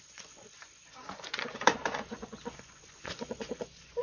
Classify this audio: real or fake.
fake